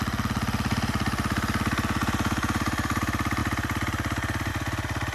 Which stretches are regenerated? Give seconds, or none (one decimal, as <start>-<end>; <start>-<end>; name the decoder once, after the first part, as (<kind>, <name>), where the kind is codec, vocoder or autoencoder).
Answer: none